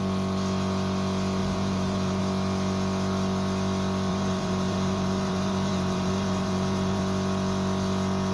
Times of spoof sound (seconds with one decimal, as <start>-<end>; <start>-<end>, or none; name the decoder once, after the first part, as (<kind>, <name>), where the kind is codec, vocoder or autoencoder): 1.4-2.2 (vocoder, BigVGAN v2); 4.1-7.0